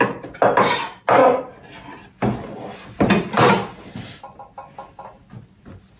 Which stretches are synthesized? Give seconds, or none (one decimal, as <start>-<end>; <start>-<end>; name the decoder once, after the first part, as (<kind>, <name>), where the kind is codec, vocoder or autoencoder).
none